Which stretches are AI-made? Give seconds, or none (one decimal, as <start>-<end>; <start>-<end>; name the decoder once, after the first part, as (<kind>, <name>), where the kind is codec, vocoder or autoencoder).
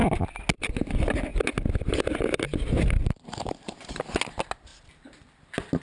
none